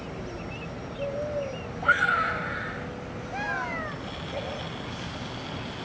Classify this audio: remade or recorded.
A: recorded